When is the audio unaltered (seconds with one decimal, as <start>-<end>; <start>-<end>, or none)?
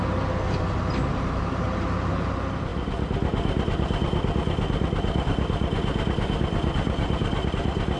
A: 0.0-8.0